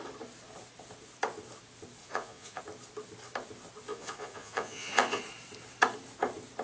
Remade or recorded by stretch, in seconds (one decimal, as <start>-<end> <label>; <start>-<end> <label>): 0.0-2.0 recorded; 2.0-2.6 remade; 2.6-3.9 recorded; 3.9-5.2 remade; 5.2-6.6 recorded

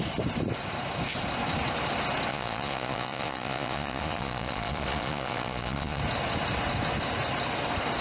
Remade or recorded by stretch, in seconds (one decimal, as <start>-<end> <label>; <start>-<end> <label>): 0.0-2.3 recorded; 2.3-6.0 remade; 6.0-8.0 recorded